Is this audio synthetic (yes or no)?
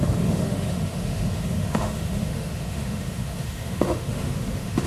yes